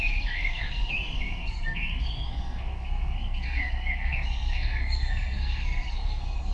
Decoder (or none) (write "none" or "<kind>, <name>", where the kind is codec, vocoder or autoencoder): codec, SNAC